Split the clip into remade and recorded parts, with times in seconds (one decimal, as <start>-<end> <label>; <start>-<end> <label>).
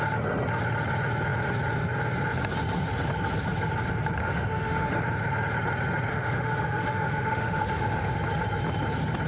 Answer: 0.0-4.2 recorded; 4.2-5.0 remade; 5.0-6.1 recorded; 6.1-8.2 remade; 8.2-9.3 recorded